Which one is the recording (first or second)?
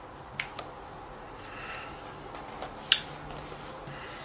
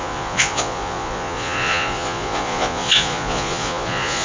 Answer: first